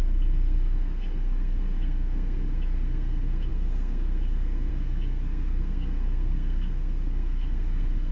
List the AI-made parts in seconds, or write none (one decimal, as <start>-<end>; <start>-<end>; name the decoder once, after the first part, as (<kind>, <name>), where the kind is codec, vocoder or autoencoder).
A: 0.0-8.1 (codec, SNAC)